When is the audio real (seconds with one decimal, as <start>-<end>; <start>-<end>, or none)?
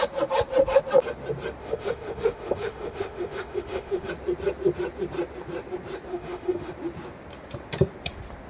0.0-1.6; 4.1-6.1; 6.7-8.5